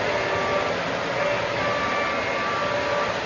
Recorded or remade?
recorded